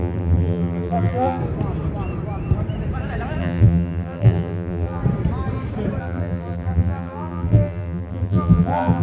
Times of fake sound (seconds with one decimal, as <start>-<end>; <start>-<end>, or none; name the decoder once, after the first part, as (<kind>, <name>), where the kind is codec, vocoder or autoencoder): 0.0-1.4 (vocoder, BigVGAN v2); 3.4-5.0; 6.0-9.0